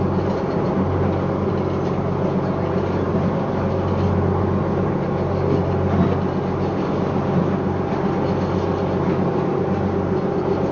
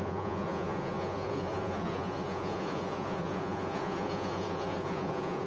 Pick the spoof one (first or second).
second